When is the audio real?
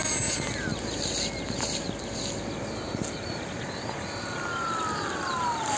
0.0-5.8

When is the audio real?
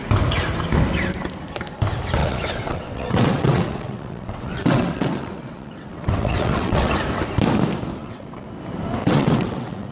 0.0-2.2; 6.9-8.0; 8.5-9.0